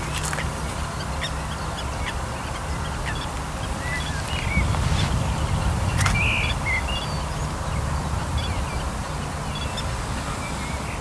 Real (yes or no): yes